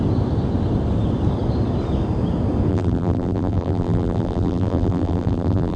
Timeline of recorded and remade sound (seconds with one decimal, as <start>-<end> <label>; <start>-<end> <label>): 0.0-2.7 recorded; 2.7-5.8 remade